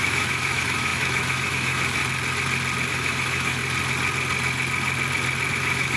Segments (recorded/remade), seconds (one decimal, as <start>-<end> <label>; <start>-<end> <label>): 0.0-2.0 remade; 2.0-2.9 recorded; 2.9-3.6 remade; 3.6-5.5 recorded; 5.5-6.0 remade